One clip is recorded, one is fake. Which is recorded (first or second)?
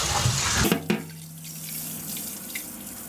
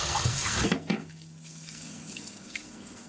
first